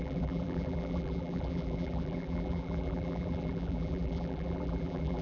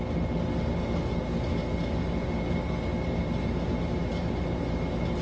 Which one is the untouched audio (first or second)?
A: second